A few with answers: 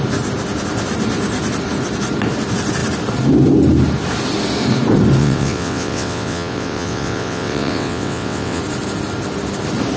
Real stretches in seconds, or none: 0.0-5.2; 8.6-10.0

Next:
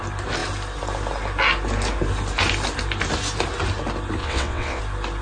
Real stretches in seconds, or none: 0.0-4.2; 4.8-5.2

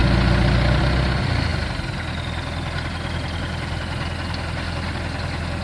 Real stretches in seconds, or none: 0.0-5.6

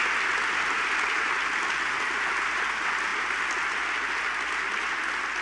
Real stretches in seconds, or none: 0.0-5.4

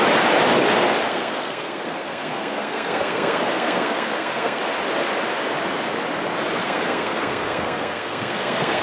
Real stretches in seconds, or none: 0.0-1.1; 4.6-6.6

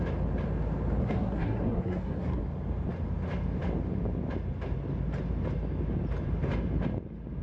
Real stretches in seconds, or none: 0.0-1.0; 2.4-7.4